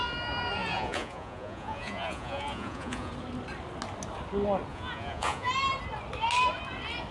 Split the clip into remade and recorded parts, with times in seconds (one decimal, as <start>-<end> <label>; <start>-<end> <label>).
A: 0.0-0.6 recorded; 0.6-3.1 remade; 3.1-4.7 recorded; 4.7-5.5 remade; 5.5-7.1 recorded